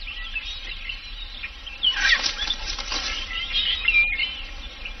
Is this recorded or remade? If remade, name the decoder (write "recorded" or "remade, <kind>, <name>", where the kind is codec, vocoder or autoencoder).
recorded